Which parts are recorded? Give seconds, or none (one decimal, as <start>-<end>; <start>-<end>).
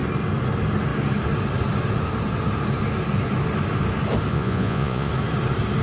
0.0-4.3; 5.1-5.8